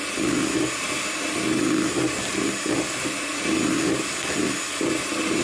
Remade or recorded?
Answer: recorded